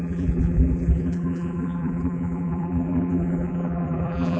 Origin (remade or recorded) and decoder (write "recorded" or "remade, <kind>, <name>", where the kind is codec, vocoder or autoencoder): remade, vocoder, BigVGAN v2